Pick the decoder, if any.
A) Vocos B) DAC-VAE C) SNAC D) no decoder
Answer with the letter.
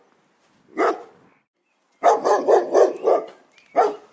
D